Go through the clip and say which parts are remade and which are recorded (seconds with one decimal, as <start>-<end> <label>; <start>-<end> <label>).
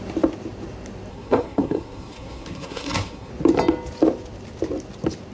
0.0-1.1 recorded; 1.1-3.3 remade; 3.3-5.3 recorded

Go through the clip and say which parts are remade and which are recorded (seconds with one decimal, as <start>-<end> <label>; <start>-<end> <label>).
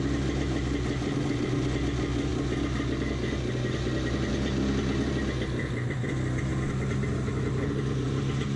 0.0-8.6 recorded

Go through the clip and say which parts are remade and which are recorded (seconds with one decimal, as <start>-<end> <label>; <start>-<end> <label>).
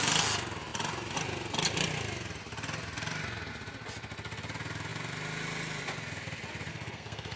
0.0-6.7 recorded; 6.7-7.4 remade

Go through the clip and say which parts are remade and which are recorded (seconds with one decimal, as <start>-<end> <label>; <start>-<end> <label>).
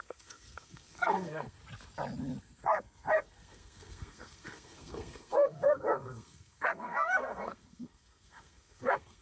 0.0-1.6 remade; 1.6-2.4 recorded; 2.4-9.2 remade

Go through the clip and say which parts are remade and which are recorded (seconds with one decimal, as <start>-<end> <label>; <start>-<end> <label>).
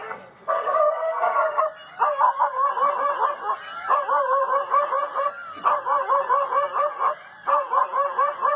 0.0-1.6 remade; 1.6-8.6 recorded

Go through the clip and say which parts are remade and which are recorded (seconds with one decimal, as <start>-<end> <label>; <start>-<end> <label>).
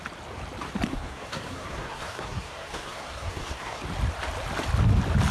0.0-0.9 recorded; 0.9-3.8 remade; 3.8-5.3 recorded